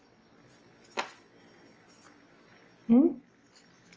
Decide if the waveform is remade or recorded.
recorded